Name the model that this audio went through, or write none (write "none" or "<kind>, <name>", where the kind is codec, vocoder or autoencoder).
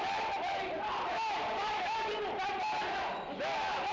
none